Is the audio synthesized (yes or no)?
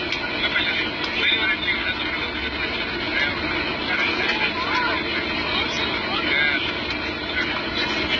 no